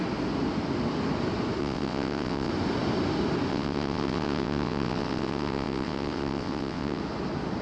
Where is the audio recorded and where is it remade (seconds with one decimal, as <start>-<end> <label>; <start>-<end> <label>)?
0.0-1.6 recorded; 1.6-2.5 remade; 2.5-3.5 recorded; 3.5-7.0 remade; 7.0-7.6 recorded